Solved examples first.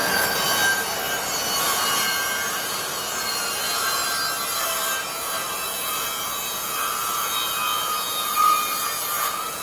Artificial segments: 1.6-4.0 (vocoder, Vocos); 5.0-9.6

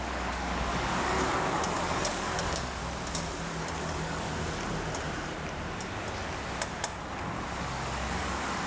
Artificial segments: 0.0-2.8 (codec, DAC); 3.8-4.3; 7.0-8.7

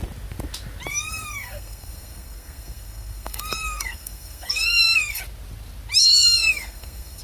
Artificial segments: 0.9-5.2 (codec, SNAC); 6.0-7.2